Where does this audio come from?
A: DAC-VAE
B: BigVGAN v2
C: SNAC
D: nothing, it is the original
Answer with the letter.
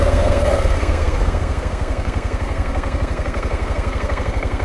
C